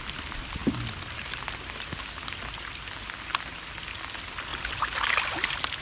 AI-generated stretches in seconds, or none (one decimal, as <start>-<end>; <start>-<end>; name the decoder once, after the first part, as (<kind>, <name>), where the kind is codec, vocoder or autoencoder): none